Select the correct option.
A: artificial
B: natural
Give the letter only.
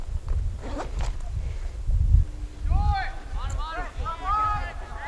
B